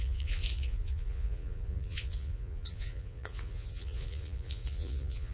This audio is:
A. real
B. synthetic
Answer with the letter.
B